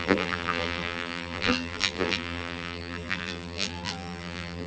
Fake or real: fake